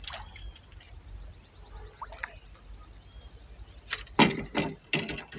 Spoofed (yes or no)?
no